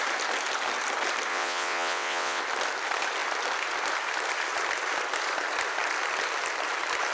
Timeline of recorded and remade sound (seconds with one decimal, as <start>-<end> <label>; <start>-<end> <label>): 0.0-1.3 recorded; 1.3-2.4 remade; 2.4-7.1 recorded